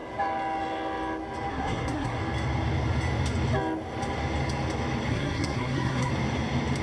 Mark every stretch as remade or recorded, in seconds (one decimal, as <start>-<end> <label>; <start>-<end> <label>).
0.0-1.5 recorded; 1.5-2.2 remade; 2.2-5.1 recorded; 5.1-6.1 remade; 6.1-6.8 recorded

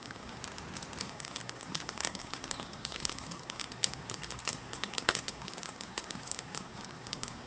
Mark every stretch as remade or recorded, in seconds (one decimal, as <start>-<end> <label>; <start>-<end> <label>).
0.0-0.4 remade; 0.4-1.0 recorded; 1.0-7.5 remade

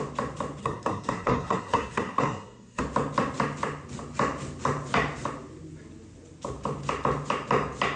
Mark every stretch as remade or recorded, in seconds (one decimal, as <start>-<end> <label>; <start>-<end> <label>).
0.0-0.6 recorded; 0.6-2.8 remade; 2.8-8.0 recorded

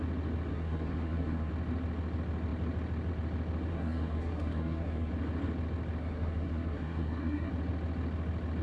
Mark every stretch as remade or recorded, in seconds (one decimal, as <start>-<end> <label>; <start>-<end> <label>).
0.0-0.5 recorded; 0.5-1.5 remade; 1.5-3.7 recorded; 3.7-5.1 remade; 5.1-6.0 recorded; 6.0-7.5 remade; 7.5-8.6 recorded

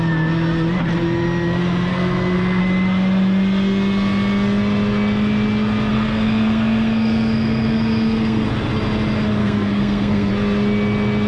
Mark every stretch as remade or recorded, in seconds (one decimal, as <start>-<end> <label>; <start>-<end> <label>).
0.0-1.9 recorded; 1.9-2.6 remade; 2.6-5.9 recorded; 5.9-8.5 remade; 8.5-9.4 recorded; 9.4-10.3 remade; 10.3-11.3 recorded

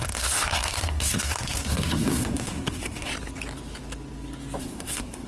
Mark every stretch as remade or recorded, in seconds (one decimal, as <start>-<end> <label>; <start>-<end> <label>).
0.0-3.1 remade; 3.1-4.6 recorded; 4.6-5.3 remade